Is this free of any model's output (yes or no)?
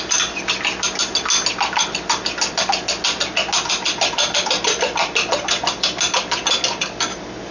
yes